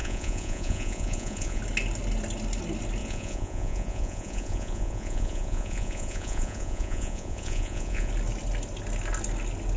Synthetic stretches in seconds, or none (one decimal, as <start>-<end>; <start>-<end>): 0.0-1.6; 3.0-8.1